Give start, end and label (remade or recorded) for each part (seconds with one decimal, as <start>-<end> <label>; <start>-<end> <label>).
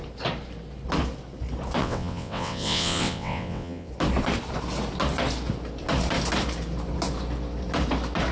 0.0-1.8 recorded; 1.8-3.9 remade; 3.9-8.3 recorded